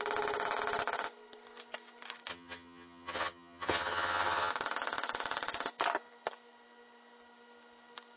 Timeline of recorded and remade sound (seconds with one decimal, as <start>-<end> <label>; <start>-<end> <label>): 0.0-2.3 recorded; 2.3-4.5 remade; 4.5-8.2 recorded